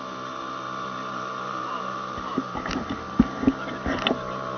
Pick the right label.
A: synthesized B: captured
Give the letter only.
A